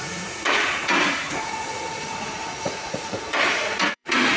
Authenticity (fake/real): fake